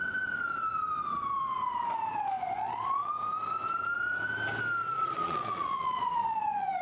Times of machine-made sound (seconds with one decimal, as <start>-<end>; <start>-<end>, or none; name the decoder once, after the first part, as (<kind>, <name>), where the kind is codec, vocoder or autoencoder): 2.6-3.1 (vocoder, Vocos); 4.8-6.8